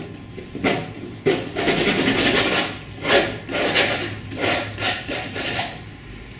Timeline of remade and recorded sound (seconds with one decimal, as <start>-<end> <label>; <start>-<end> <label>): 0.0-4.7 recorded; 4.7-5.6 remade; 5.6-6.4 recorded